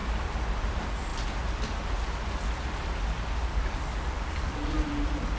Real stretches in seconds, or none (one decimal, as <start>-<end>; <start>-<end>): 0.0-3.5; 4.7-5.4